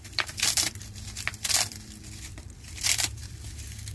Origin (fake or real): fake